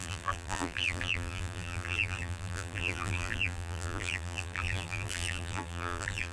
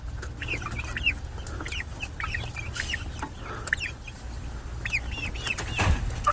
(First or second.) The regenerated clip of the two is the first